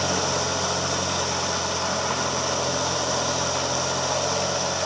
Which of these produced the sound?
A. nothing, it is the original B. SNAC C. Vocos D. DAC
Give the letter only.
A